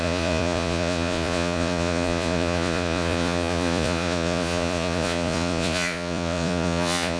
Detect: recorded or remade remade